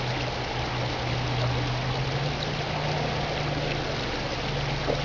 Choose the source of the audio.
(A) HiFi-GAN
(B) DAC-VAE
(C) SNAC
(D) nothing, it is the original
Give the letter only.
D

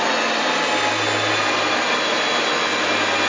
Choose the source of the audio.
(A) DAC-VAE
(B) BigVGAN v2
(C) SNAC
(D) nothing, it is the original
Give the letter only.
D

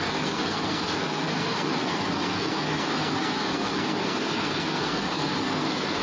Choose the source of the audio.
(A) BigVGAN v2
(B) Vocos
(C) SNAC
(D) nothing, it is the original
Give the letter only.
C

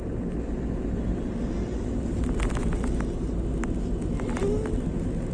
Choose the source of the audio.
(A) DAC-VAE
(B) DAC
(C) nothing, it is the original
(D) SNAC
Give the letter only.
C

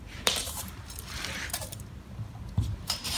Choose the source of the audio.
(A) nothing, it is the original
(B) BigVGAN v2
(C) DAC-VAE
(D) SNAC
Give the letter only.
B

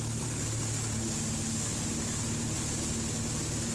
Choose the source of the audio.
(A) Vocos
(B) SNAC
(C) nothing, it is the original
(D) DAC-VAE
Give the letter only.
C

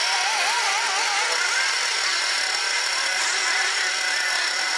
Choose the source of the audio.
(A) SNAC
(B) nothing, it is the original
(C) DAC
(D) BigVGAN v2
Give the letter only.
B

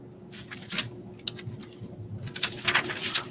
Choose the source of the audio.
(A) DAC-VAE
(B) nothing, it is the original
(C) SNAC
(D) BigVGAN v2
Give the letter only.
B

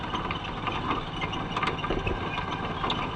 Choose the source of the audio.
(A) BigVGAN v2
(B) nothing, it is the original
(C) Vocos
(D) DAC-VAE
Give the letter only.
B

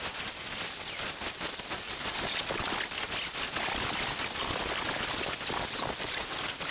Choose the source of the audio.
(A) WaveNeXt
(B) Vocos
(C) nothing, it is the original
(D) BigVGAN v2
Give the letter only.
C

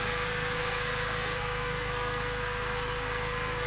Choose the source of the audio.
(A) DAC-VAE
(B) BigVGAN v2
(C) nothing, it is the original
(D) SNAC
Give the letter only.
D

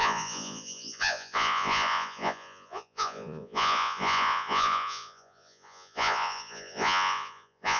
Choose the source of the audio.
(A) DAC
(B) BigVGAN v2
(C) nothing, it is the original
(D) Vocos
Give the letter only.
D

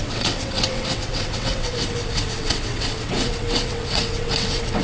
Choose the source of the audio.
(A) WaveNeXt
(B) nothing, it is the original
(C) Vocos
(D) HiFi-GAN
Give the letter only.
A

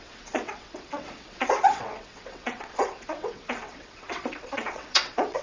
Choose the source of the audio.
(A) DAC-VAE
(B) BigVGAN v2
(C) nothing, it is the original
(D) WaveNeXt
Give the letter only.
D